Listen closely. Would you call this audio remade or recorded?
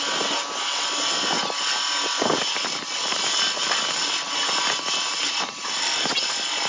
recorded